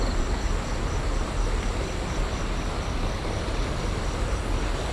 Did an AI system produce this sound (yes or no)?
no